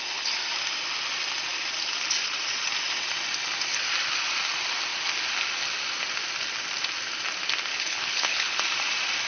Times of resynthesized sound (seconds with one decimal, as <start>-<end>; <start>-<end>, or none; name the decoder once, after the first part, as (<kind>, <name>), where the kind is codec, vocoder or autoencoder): 7.7-8.6 (codec, HILCodec)